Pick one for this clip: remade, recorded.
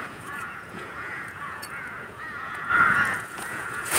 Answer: remade